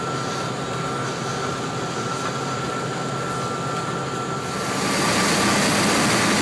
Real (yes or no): yes